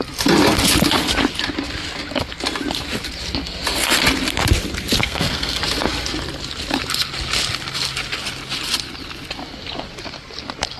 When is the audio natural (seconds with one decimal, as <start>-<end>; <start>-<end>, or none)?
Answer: 0.0-5.0; 5.6-10.8